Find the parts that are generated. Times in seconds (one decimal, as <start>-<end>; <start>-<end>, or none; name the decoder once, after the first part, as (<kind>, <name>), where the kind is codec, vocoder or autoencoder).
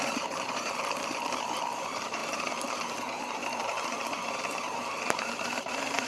0.0-6.1 (vocoder, BigVGAN v2)